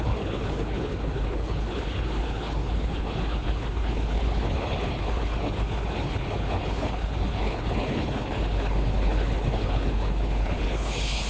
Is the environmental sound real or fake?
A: fake